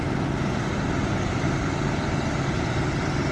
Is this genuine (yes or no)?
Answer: yes